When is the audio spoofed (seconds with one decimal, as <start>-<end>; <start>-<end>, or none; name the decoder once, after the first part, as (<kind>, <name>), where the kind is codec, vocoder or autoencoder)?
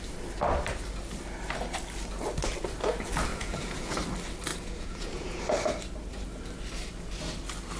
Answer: 3.3-4.0 (vocoder, Vocos); 4.5-5.4